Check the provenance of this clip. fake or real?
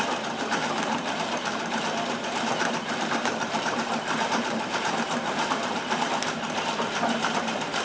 fake